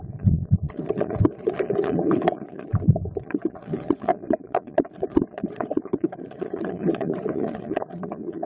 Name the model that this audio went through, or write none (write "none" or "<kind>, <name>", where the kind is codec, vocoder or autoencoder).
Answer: vocoder, Vocos